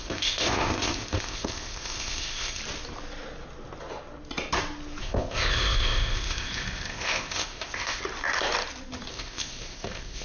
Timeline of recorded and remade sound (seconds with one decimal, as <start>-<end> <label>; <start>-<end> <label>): 0.0-2.6 remade; 2.6-5.0 recorded; 5.0-8.0 remade; 8.0-9.1 recorded; 9.1-10.2 remade